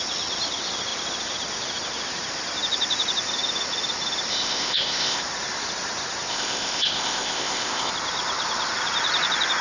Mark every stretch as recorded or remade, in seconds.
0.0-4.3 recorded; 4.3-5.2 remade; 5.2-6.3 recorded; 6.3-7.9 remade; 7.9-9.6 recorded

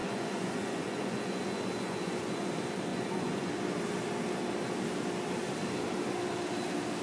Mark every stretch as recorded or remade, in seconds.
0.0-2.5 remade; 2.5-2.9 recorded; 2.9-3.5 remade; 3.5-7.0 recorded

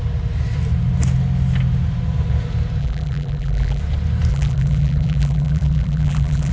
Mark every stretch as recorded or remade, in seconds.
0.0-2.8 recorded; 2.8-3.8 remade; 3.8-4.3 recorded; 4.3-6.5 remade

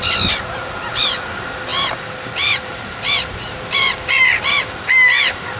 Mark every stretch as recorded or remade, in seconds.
0.0-5.6 recorded